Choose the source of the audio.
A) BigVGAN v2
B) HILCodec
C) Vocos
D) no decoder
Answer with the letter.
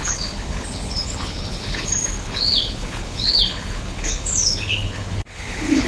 B